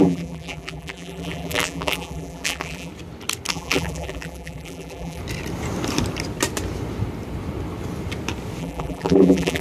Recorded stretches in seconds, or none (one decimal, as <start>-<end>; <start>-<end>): 2.9-3.5; 5.2-8.6